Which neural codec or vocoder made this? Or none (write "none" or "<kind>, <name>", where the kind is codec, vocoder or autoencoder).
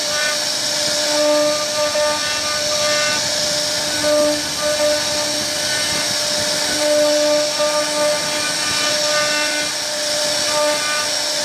none